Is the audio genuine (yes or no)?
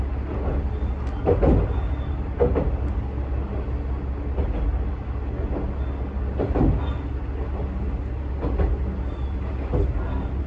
yes